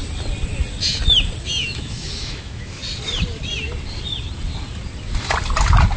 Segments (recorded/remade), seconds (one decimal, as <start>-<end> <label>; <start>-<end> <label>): 0.0-1.4 recorded; 1.4-2.8 remade; 2.8-6.0 recorded